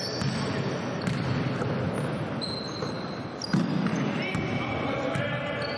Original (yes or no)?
yes